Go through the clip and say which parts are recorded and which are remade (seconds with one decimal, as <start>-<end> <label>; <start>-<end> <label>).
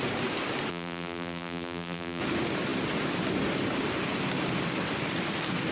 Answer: 0.0-0.7 recorded; 0.7-2.2 remade; 2.2-5.7 recorded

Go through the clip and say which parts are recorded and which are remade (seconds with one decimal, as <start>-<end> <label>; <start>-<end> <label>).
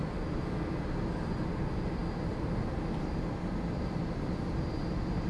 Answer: 0.0-5.3 recorded